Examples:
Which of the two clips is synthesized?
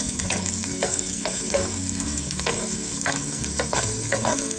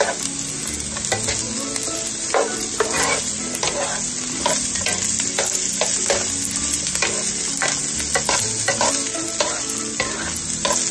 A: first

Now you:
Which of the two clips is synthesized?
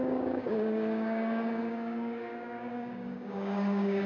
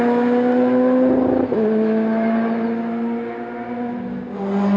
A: first